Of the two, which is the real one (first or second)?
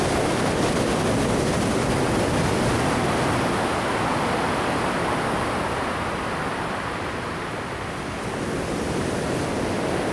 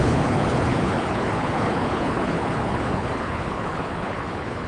first